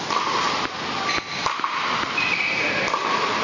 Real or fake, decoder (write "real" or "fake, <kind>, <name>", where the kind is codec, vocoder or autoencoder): real